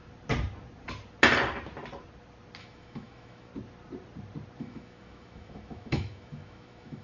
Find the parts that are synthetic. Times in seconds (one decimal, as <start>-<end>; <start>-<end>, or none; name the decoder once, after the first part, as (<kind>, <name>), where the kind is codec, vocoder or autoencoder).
2.6-3.5 (autoencoder, DAC-VAE); 4.6-7.0